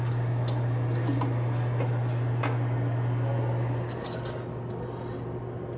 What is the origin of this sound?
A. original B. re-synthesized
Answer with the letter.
A